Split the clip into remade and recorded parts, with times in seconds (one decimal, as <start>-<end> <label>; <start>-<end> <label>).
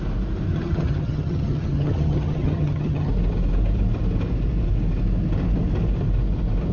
0.0-0.5 recorded; 0.5-3.1 remade; 3.1-6.7 recorded